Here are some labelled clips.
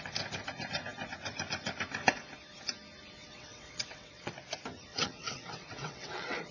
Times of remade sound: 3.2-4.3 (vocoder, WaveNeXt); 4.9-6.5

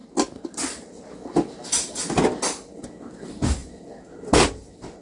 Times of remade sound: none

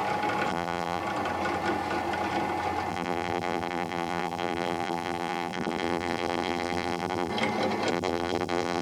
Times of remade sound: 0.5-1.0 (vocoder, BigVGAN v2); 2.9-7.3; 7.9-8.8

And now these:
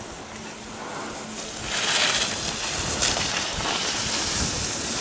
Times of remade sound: none

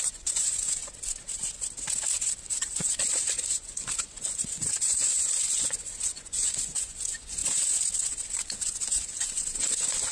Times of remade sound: 0.0-0.8 (vocoder, Vocos); 2.4-7.4; 8.4-10.1

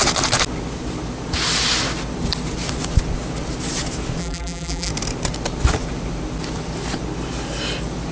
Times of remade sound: 4.2-4.9 (vocoder, BigVGAN v2)

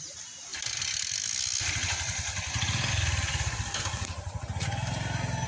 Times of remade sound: none